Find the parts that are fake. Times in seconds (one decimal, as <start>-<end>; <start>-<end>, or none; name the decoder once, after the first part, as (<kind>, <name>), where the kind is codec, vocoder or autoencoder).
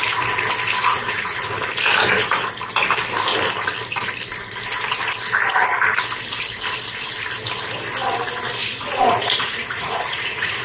0.8-1.5 (vocoder, Vocos); 8.6-10.6